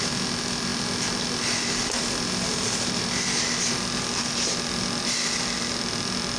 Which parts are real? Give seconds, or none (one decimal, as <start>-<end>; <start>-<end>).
0.0-6.4